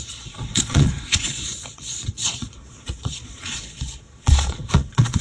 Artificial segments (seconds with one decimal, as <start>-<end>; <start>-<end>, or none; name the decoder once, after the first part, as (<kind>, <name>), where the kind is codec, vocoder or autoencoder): 0.0-5.2 (vocoder, Vocos)